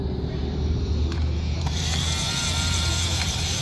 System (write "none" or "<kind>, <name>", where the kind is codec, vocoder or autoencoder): vocoder, BigVGAN v2